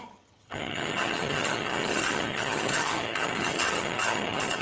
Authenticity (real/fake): fake